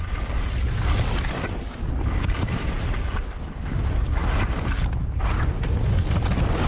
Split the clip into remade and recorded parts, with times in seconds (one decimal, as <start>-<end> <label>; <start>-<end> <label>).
0.0-6.7 recorded